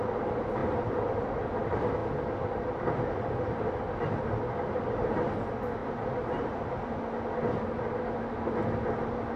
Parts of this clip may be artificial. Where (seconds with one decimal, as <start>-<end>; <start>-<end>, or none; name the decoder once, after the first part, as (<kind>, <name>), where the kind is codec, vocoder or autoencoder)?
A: 5.8-7.0 (vocoder, BigVGAN v2)